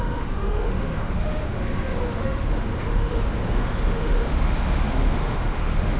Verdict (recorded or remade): remade